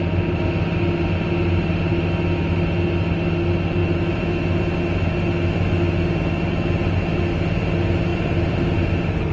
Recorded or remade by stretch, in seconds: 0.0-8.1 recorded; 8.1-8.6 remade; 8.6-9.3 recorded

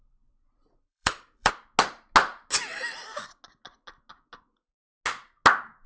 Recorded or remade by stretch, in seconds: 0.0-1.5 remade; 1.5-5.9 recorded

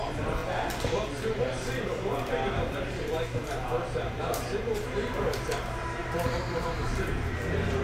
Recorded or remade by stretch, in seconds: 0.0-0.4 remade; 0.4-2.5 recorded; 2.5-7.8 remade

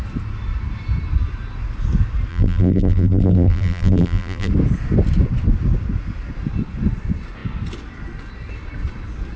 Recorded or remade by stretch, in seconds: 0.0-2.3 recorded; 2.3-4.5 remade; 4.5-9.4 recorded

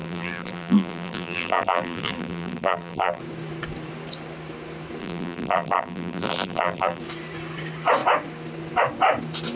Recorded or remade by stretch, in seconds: 0.0-3.2 remade; 3.2-5.0 recorded; 5.0-7.0 remade; 7.0-9.6 recorded